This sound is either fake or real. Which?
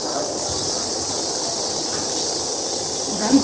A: real